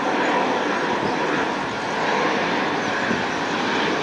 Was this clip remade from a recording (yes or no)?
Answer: no